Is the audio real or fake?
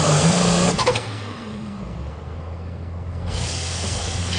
fake